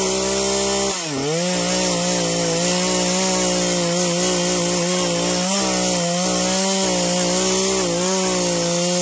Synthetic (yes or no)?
no